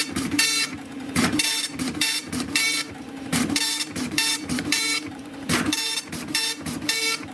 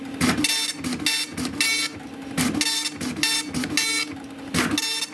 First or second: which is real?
second